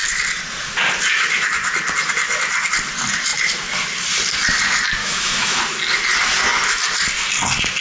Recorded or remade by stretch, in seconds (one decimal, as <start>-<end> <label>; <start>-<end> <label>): 0.0-5.0 recorded; 5.0-5.6 remade; 5.6-7.8 recorded